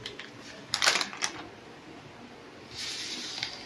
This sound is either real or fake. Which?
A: fake